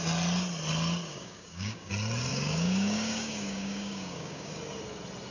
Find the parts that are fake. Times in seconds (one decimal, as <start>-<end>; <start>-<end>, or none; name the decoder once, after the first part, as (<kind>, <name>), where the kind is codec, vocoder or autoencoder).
1.1-1.9 (codec, DAC); 2.3-4.6